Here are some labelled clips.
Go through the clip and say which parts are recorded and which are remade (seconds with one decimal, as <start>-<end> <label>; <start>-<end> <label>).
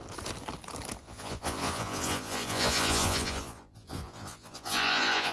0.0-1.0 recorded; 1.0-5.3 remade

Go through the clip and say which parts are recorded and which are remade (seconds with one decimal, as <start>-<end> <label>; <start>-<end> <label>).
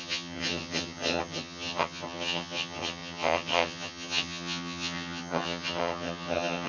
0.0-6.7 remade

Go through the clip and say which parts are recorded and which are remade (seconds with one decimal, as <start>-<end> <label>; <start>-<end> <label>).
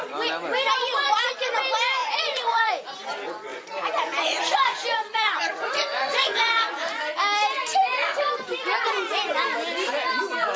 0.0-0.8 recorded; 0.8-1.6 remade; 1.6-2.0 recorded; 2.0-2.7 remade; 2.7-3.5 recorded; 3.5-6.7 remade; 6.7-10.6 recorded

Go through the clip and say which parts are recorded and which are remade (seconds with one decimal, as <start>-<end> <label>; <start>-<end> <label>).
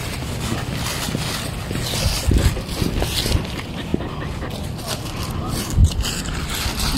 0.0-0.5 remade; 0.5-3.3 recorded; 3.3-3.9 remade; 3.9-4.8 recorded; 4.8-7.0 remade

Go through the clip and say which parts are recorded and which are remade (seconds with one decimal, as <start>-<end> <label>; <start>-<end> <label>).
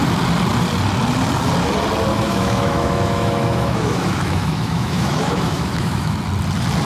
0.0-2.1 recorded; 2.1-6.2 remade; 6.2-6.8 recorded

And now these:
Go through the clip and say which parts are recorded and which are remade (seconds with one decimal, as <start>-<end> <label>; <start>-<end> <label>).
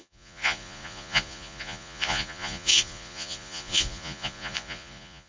0.0-5.3 remade